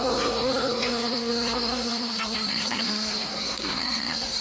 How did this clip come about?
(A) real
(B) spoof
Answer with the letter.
B